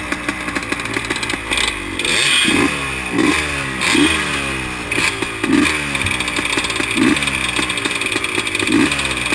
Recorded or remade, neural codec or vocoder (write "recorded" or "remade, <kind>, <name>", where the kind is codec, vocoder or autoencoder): recorded